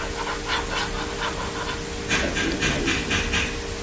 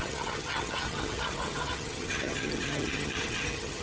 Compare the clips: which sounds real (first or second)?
first